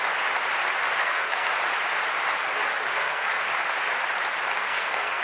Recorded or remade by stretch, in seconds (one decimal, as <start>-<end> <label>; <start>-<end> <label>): 0.0-1.0 recorded; 1.0-1.5 remade; 1.5-2.9 recorded; 2.9-3.4 remade; 3.4-4.5 recorded; 4.5-5.2 remade